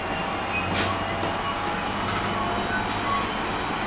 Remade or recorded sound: recorded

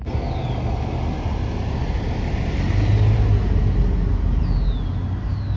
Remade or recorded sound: recorded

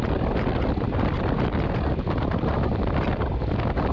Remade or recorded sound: recorded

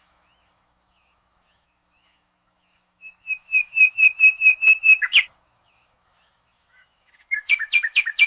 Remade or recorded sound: remade